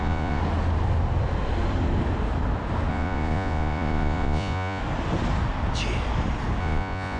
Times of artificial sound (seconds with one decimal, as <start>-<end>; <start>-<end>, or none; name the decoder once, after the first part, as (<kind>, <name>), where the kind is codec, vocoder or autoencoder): 0.0-0.4 (vocoder, Vocos); 2.9-4.8; 6.6-7.2

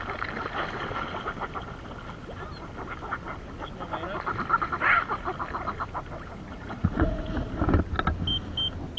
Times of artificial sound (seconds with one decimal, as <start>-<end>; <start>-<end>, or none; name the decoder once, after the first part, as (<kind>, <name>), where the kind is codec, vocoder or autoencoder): 6.5-7.5 (vocoder, Vocos)